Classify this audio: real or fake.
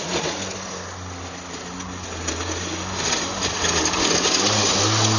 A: real